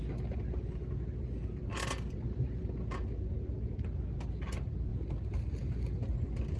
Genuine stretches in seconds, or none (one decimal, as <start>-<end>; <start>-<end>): 0.0-6.6